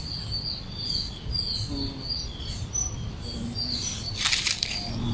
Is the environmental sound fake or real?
real